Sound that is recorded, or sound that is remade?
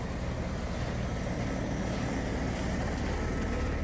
recorded